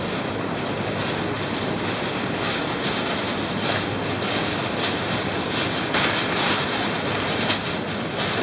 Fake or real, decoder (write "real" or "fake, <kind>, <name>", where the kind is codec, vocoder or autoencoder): real